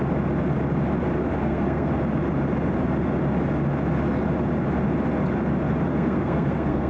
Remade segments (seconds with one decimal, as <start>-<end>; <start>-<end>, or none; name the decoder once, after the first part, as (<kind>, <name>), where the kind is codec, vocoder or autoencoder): 1.4-1.9 (codec, SNAC); 5.9-6.9

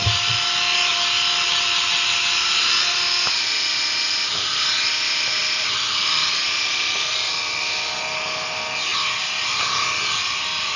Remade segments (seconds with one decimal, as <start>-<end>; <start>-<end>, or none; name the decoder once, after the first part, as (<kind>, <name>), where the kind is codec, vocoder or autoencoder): none

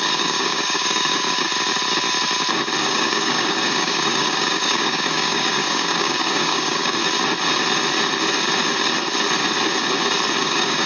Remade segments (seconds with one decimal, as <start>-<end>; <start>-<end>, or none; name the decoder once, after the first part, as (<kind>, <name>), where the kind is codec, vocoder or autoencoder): 0.0-1.5 (codec, DAC); 2.8-7.0; 10.4-10.9

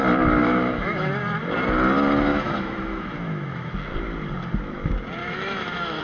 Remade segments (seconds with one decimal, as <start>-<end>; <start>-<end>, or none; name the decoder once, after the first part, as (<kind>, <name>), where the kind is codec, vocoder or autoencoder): 0.4-1.1 (autoencoder, DAC-VAE); 2.3-3.7; 5.2-6.0

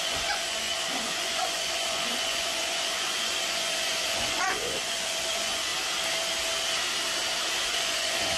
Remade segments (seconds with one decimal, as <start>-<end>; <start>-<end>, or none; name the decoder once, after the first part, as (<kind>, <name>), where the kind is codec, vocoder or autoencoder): 0.0-5.7 (vocoder, Vocos); 7.7-8.4

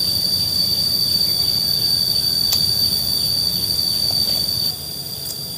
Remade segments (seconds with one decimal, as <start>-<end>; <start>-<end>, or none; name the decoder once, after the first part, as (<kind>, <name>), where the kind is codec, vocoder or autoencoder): 0.0-1.3 (vocoder, BigVGAN v2); 4.7-5.6

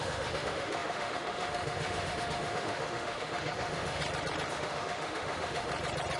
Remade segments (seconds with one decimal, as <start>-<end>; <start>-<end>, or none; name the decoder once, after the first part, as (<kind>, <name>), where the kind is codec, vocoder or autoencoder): 0.0-4.0 (autoencoder, DAC-VAE); 4.5-5.7

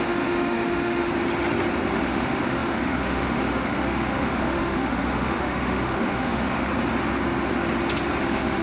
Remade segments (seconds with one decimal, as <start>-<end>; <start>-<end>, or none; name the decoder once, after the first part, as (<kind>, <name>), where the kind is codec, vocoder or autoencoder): 0.0-1.1 (autoencoder, DAC-VAE); 2.0-6.7; 8.2-8.6